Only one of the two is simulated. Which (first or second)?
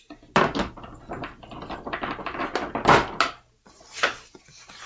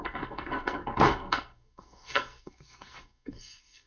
second